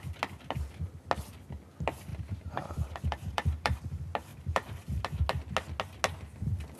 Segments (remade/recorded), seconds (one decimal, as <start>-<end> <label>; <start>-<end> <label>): 0.0-2.1 recorded; 2.1-3.8 remade; 3.8-4.3 recorded; 4.3-5.0 remade; 5.0-6.8 recorded